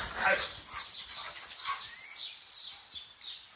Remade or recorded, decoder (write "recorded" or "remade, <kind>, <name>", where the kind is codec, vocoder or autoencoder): recorded